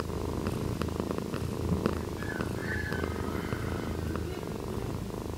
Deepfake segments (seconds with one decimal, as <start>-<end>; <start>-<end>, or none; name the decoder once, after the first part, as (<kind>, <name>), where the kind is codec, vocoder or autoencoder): none